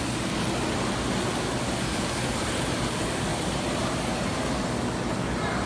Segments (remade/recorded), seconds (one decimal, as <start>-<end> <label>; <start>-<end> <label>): 0.0-3.3 recorded; 3.3-4.5 remade; 4.5-5.7 recorded